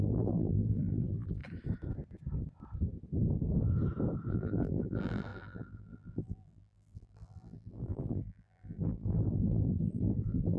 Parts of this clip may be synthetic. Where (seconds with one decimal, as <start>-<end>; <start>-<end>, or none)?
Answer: 0.0-1.4; 4.3-10.6